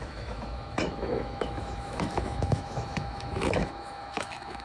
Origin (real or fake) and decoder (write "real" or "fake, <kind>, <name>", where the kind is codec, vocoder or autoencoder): fake, autoencoder, DAC-VAE